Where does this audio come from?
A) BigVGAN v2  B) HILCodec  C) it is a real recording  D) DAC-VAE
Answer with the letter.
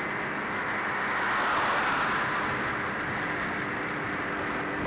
C